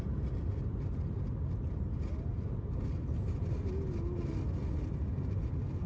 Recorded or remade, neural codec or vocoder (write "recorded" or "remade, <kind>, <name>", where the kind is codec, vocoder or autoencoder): recorded